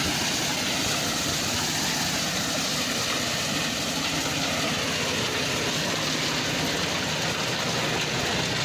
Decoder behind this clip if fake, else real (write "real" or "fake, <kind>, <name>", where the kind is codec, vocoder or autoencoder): real